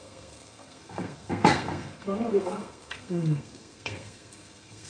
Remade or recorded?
remade